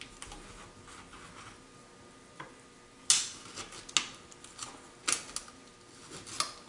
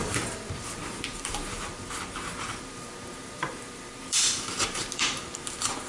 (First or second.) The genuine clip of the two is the first